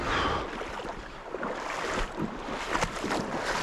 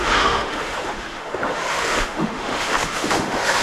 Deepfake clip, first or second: second